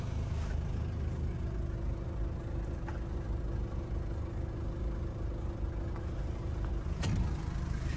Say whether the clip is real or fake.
real